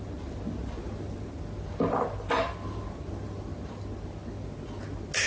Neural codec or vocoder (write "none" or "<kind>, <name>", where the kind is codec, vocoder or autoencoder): none